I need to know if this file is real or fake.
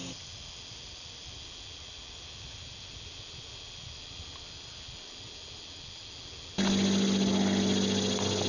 real